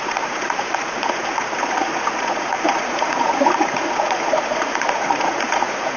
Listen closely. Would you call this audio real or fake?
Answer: fake